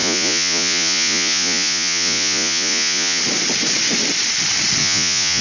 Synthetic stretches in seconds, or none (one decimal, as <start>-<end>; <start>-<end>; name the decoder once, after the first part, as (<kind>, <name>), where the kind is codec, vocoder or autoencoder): 0.0-3.2 (vocoder, Vocos); 4.8-5.4

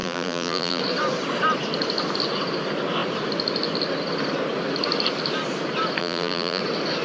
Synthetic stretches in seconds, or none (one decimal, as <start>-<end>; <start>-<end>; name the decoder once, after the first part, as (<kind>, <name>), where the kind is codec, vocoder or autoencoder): 0.0-0.8 (vocoder, BigVGAN v2); 6.0-6.6